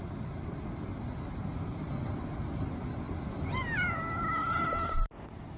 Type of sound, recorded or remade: recorded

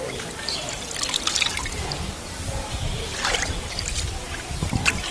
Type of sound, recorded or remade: recorded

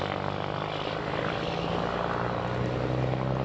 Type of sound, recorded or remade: recorded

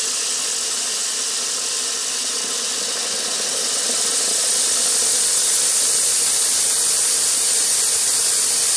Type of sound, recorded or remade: recorded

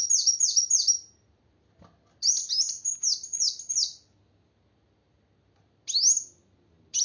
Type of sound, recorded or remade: recorded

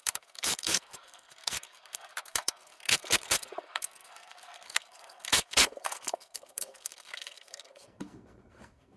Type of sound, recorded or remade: remade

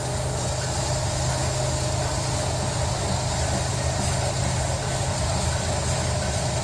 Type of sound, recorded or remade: recorded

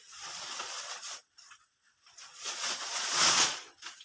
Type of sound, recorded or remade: remade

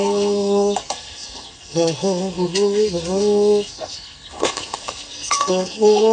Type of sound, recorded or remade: remade